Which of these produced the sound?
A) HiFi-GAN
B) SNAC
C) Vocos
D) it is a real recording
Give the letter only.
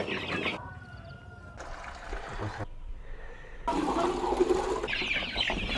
D